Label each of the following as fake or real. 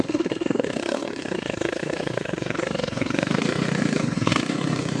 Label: fake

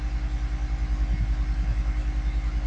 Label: real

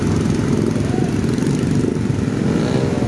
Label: real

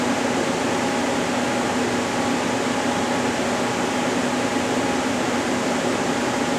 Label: real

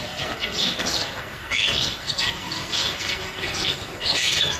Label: fake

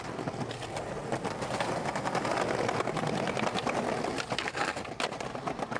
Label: real